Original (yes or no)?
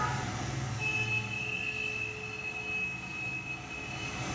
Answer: yes